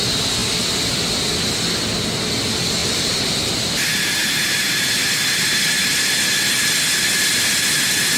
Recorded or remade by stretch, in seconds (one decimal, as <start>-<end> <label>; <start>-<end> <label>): 0.0-2.8 recorded; 2.8-3.5 remade; 3.5-8.2 recorded